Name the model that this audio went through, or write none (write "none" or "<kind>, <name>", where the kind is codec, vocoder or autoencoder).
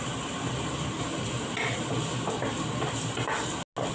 none